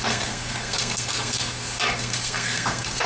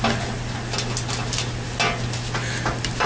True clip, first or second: second